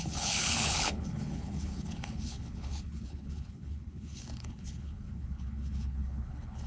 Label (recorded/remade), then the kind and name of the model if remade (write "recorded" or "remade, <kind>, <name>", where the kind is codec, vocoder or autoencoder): remade, codec, HILCodec